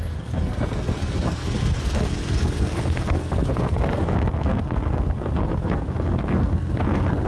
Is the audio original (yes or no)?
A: no